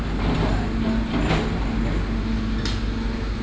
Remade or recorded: recorded